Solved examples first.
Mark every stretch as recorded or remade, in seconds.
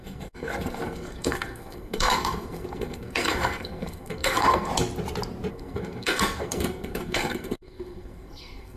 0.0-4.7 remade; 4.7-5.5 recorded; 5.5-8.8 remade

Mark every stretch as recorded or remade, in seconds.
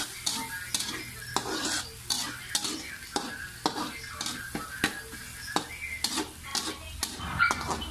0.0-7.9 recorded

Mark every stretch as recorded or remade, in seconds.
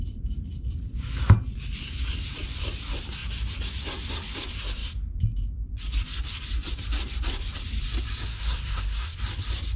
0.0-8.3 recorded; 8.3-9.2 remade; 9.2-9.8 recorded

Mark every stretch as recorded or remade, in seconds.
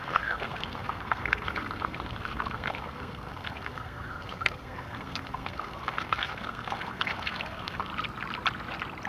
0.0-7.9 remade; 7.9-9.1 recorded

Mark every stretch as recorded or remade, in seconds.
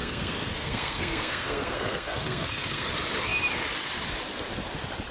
0.0-2.9 remade; 2.9-5.1 recorded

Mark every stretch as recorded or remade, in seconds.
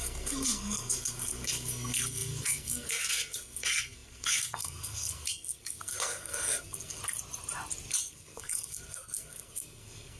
0.0-7.0 remade; 7.0-8.0 recorded; 8.0-10.2 remade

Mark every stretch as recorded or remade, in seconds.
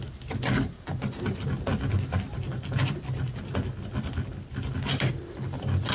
0.0-5.9 recorded